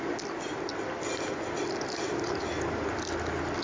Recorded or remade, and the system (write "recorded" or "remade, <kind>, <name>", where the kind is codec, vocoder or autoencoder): recorded